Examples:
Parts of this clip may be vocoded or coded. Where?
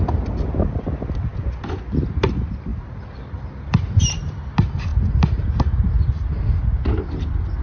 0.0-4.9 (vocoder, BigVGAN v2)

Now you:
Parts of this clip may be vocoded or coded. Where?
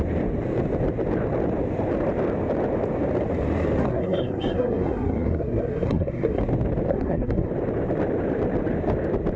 3.8-6.4 (codec, SNAC); 6.9-7.5